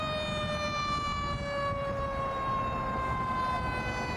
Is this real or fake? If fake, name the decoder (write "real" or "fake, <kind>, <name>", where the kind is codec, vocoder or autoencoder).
real